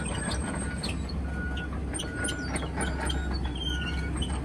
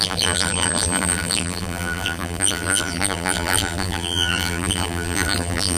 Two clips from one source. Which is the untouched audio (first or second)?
first